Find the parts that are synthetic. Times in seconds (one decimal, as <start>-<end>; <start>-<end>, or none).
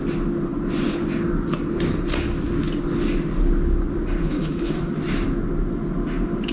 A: 4.2-4.8